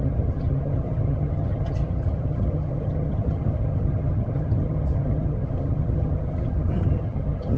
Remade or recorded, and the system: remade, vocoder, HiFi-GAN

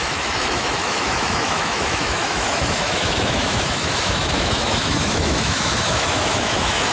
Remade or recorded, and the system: remade, autoencoder, DAC-VAE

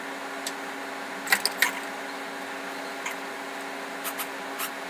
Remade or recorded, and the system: recorded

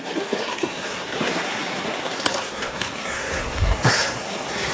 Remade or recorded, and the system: remade, codec, SNAC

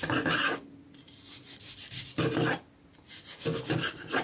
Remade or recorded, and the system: recorded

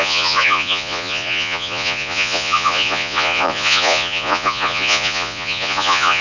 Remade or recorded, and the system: remade, vocoder, Vocos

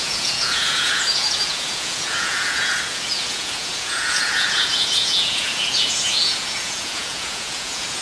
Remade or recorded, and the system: remade, vocoder, Vocos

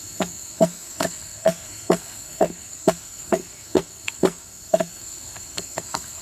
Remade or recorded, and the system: remade, codec, SNAC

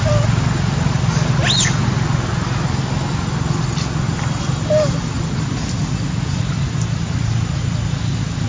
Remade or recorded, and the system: recorded